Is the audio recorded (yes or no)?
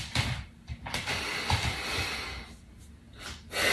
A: yes